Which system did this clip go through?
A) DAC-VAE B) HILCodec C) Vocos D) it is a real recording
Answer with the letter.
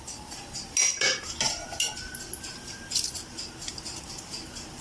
D